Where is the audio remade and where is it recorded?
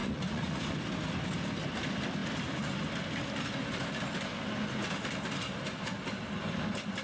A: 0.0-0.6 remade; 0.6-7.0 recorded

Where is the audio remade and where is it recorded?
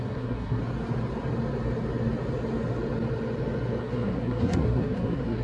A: 0.0-0.6 remade; 0.6-3.8 recorded; 3.8-5.4 remade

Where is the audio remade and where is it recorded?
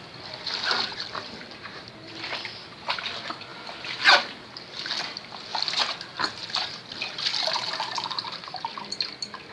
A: 0.0-0.9 recorded; 0.9-2.1 remade; 2.1-5.5 recorded; 5.5-8.8 remade; 8.8-9.5 recorded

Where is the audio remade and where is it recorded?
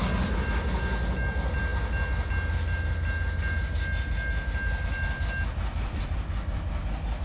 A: 0.0-7.2 recorded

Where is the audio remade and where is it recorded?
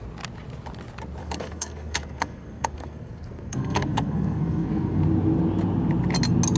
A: 0.0-1.2 recorded; 1.2-5.0 remade; 5.0-6.6 recorded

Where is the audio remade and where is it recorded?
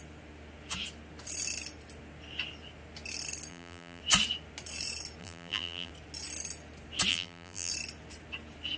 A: 0.0-3.5 recorded; 3.5-4.0 remade; 4.0-5.2 recorded; 5.2-5.9 remade; 5.9-7.1 recorded; 7.1-7.7 remade; 7.7-8.8 recorded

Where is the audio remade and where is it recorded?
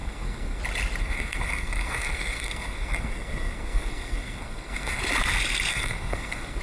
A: 0.0-0.6 remade; 0.6-1.0 recorded; 1.0-5.0 remade; 5.0-5.7 recorded; 5.7-6.6 remade